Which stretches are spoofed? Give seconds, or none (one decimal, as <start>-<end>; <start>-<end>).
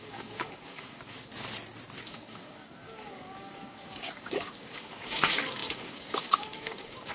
0.0-1.3; 2.0-7.1